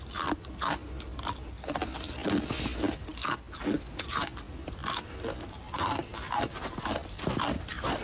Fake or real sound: real